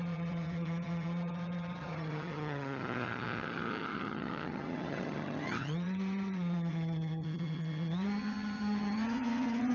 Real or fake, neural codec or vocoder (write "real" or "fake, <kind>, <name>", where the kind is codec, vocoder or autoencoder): fake, vocoder, HiFi-GAN